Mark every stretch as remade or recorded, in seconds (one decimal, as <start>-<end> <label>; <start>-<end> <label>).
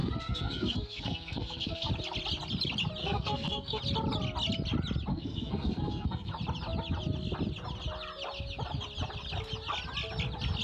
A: 0.0-1.9 remade; 1.9-3.0 recorded; 3.0-3.8 remade; 3.8-5.1 recorded; 5.1-6.3 remade; 6.3-10.6 recorded